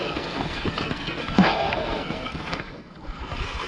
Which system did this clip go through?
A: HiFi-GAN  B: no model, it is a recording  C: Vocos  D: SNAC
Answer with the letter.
D